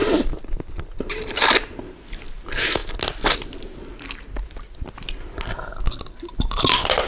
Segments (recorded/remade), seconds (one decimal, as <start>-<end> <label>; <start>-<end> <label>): 0.0-7.1 recorded